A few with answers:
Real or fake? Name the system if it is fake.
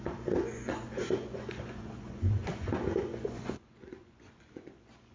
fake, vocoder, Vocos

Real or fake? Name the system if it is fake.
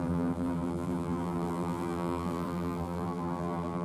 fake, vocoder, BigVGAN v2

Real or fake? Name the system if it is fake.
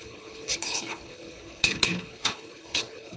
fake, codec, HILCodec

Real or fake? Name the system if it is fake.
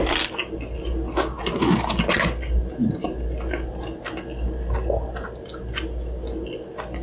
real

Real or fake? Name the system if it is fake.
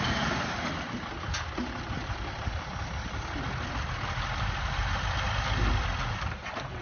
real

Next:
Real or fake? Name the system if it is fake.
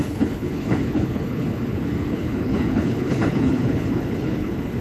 fake, codec, HILCodec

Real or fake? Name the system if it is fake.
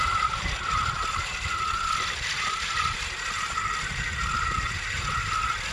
real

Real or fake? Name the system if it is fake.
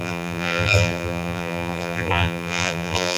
fake, vocoder, BigVGAN v2